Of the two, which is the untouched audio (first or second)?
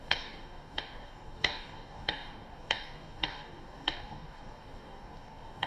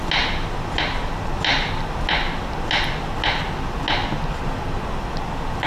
second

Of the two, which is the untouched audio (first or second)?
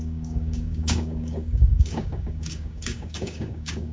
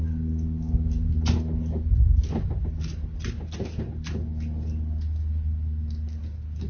second